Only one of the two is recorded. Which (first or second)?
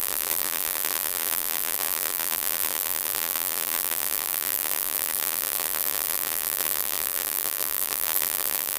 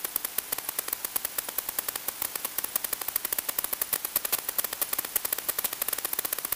second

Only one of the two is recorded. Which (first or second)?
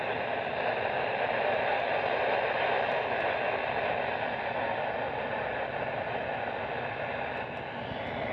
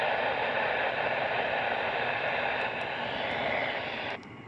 first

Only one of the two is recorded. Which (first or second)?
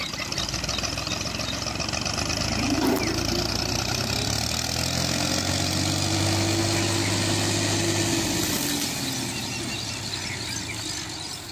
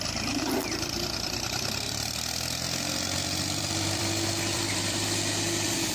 first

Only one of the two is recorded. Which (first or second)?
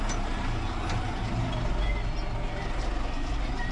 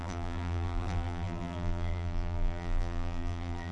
first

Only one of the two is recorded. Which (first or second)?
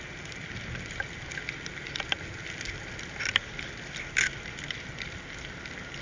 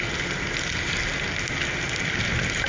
second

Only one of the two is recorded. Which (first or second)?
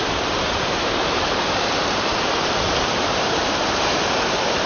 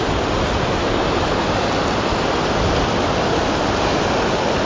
second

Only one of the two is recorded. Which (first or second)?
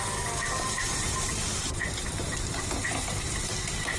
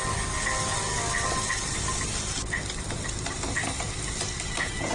second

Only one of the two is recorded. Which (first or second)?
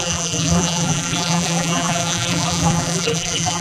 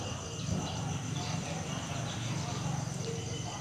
second